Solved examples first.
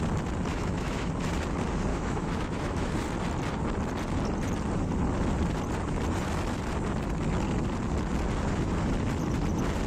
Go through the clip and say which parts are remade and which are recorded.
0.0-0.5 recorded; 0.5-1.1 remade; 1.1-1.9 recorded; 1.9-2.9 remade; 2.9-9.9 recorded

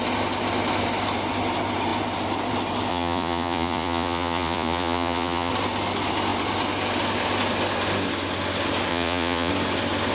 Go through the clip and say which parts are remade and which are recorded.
0.0-2.9 recorded; 2.9-5.5 remade; 5.5-8.9 recorded; 8.9-9.5 remade; 9.5-10.1 recorded